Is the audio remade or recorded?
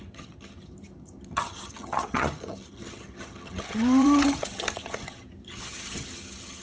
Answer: remade